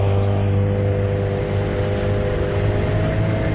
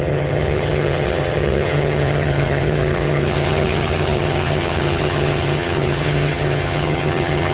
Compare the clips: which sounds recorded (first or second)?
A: first